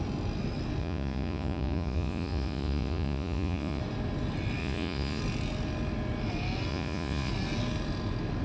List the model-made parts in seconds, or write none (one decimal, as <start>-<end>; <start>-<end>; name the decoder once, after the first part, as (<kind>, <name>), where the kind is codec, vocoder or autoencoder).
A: 0.8-3.8 (vocoder, Vocos); 4.6-5.2; 6.7-7.3

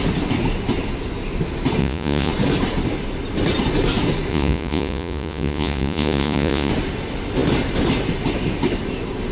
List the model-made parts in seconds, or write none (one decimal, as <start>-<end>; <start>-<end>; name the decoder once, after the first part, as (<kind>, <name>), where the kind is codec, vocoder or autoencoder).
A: 1.8-2.3 (vocoder, Vocos); 4.3-6.7

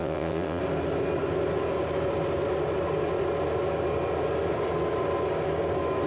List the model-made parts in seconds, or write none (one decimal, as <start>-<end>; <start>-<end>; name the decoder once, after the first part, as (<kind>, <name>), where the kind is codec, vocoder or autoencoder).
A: 0.0-0.6 (vocoder, WaveNeXt)

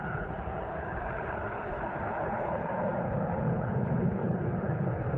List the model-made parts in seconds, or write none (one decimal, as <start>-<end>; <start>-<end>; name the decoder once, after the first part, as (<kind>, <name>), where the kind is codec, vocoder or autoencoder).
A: 0.0-5.2 (codec, HILCodec)

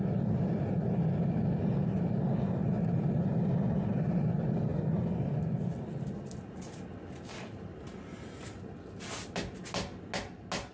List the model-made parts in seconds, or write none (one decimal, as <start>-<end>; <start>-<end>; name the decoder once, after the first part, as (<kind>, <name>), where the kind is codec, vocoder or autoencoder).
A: none

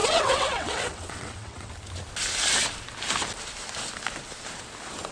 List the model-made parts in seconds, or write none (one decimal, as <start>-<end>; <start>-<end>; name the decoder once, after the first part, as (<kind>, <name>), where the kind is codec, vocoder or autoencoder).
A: 0.0-1.7 (vocoder, WaveNeXt)

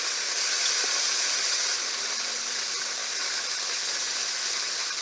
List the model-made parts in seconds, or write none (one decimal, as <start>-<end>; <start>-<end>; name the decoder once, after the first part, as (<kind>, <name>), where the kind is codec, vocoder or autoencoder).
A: none